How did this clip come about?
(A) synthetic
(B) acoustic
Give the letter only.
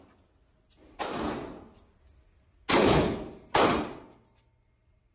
B